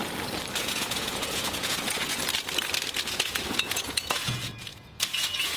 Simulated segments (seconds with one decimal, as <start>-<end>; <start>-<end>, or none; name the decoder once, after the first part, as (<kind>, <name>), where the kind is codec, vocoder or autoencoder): 0.6-2.2 (vocoder, Vocos); 3.1-5.6